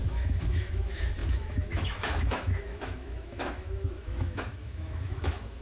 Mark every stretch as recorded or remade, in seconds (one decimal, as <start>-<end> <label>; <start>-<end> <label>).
0.0-5.6 remade